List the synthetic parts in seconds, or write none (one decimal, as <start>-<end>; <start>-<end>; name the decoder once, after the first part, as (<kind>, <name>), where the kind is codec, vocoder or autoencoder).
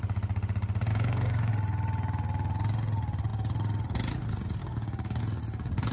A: 0.9-1.5 (codec, DAC); 4.6-5.2